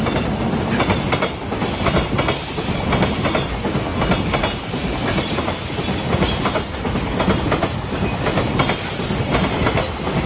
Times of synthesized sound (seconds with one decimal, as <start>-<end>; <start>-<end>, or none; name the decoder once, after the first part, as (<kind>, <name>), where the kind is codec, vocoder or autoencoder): none